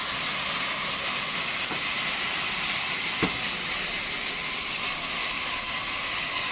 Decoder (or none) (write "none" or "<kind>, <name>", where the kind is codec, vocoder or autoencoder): none